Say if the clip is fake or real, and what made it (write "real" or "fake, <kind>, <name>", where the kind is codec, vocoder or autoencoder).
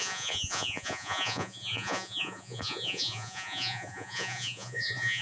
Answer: fake, vocoder, Vocos